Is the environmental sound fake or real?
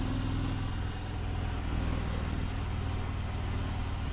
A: real